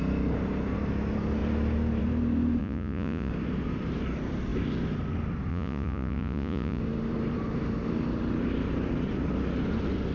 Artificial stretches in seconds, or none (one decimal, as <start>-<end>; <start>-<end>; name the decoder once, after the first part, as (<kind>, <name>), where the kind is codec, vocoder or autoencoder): 2.6-3.3 (vocoder, Vocos); 5.5-6.8